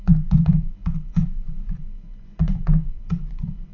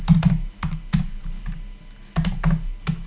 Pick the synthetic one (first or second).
first